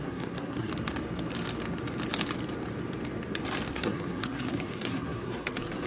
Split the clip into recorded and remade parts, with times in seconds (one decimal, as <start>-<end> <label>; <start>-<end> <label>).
0.0-0.7 remade; 0.7-3.7 recorded; 3.7-5.9 remade